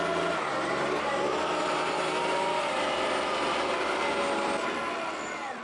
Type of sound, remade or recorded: recorded